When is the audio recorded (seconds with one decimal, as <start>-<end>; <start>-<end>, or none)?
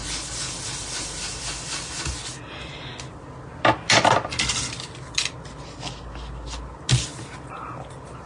0.0-8.3